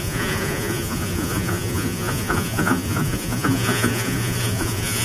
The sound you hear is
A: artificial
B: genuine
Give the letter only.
A